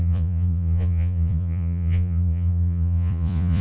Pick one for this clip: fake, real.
fake